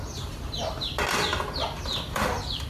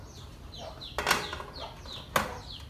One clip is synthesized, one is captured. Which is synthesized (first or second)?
first